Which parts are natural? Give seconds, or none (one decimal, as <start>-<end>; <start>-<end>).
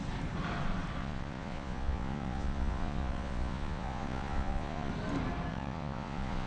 0.0-1.0; 4.9-5.5